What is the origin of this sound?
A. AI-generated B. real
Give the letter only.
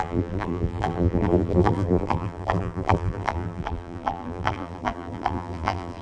A